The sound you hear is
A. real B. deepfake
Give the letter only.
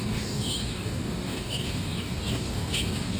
B